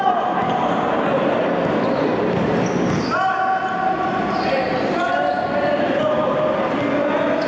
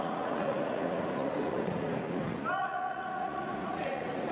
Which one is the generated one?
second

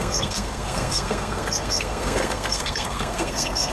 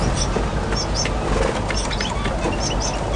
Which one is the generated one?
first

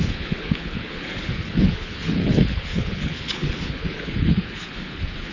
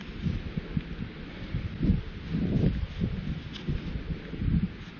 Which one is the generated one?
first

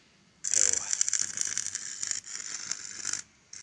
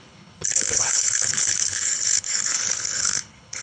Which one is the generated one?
second